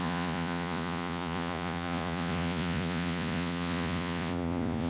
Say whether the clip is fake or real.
fake